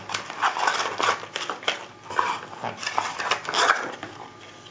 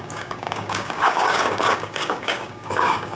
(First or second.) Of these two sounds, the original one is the first